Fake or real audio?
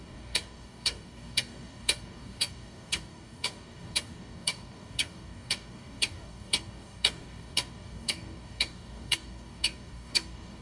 fake